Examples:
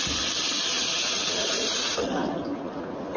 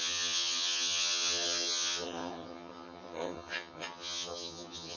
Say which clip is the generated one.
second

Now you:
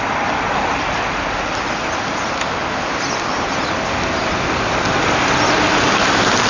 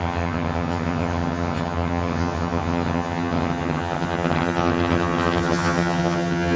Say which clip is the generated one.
second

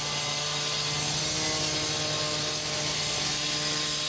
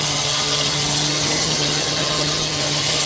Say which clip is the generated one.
second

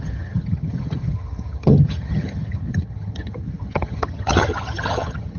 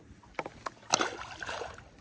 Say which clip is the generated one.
first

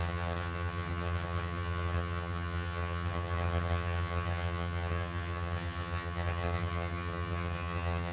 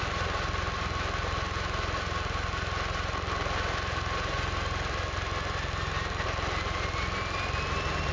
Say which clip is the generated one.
first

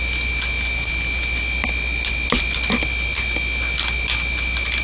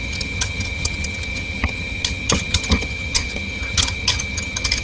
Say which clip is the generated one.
second